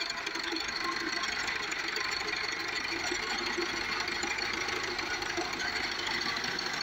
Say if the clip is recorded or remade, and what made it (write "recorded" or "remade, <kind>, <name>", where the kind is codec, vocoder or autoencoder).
remade, vocoder, BigVGAN v2